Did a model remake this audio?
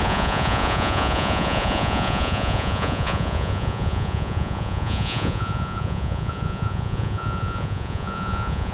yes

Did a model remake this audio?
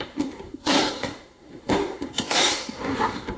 yes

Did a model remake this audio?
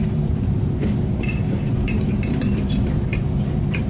yes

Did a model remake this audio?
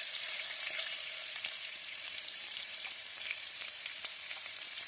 yes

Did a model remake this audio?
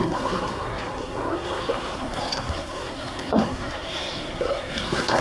yes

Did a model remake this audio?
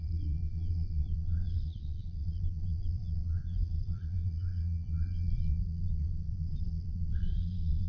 yes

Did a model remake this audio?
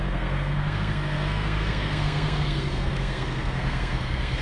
yes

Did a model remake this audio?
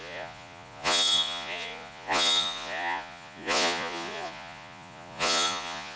yes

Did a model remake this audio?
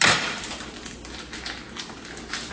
no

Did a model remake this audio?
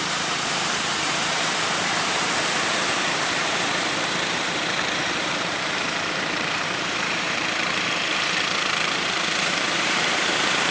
yes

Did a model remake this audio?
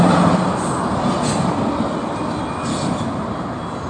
no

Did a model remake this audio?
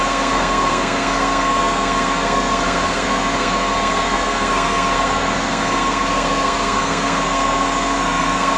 yes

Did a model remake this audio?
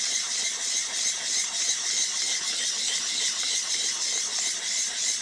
yes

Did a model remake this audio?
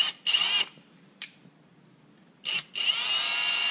yes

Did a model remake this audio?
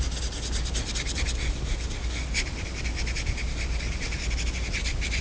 no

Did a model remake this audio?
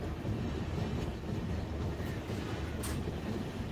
no